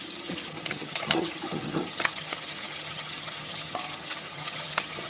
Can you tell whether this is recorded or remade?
remade